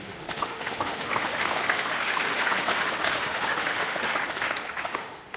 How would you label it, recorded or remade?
remade